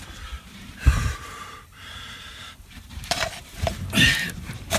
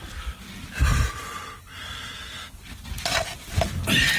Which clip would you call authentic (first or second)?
second